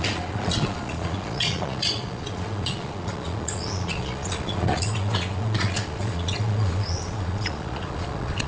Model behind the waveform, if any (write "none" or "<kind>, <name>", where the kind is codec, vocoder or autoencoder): vocoder, Vocos